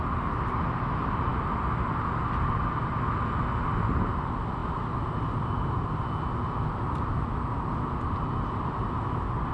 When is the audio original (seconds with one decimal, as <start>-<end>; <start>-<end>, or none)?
0.0-9.5

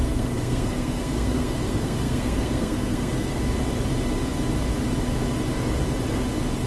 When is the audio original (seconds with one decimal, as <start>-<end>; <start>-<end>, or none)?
3.4-6.7